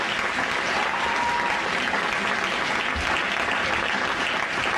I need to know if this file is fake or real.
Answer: real